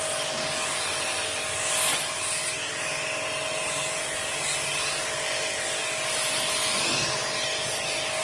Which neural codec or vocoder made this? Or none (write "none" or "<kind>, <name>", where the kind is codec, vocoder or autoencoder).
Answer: none